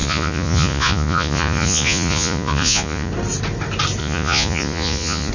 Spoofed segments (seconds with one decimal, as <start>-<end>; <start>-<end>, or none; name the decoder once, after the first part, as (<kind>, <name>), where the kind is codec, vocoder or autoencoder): 0.0-3.1 (vocoder, Vocos); 4.0-5.3